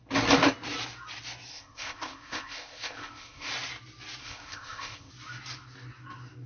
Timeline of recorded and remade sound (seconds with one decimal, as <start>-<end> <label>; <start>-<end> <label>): 0.0-1.5 recorded; 1.5-3.5 remade; 3.5-4.2 recorded; 4.2-5.1 remade; 5.1-6.5 recorded